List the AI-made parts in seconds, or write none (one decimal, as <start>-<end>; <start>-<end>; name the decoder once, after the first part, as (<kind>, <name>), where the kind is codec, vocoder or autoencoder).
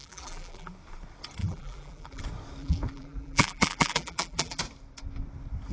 0.0-0.7 (vocoder, BigVGAN v2); 1.4-2.2; 2.6-4.6